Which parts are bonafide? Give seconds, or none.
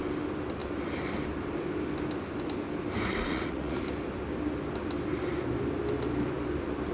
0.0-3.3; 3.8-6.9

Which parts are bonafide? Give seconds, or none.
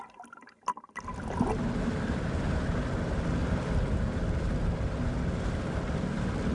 0.0-6.5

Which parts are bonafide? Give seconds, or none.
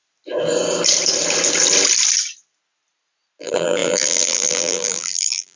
0.0-3.4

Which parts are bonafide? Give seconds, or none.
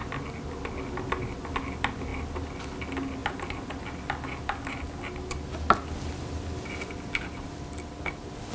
0.0-8.5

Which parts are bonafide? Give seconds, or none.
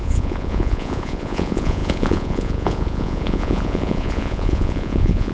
none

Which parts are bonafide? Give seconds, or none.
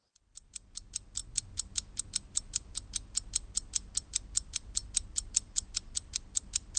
0.0-6.8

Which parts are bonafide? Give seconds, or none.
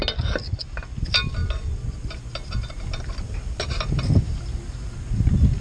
0.0-5.6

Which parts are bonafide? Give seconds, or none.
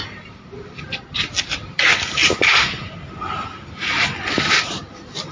0.0-5.3